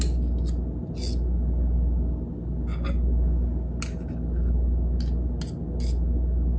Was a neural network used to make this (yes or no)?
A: no